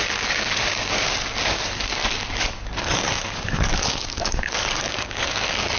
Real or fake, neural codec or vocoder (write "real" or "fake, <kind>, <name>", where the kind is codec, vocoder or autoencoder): fake, codec, DAC